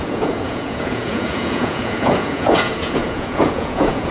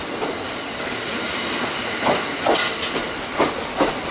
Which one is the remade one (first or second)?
first